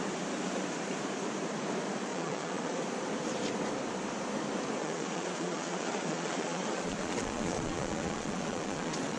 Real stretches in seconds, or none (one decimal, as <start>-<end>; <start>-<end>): 0.0-2.1; 2.8-4.8